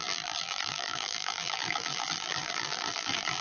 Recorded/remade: remade